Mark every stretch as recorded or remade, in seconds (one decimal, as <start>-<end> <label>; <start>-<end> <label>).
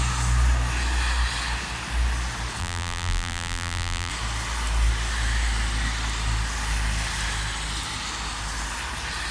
0.0-2.6 recorded; 2.6-4.1 remade; 4.1-9.3 recorded